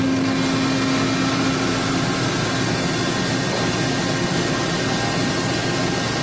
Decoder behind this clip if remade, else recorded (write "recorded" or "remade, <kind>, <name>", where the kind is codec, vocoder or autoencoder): recorded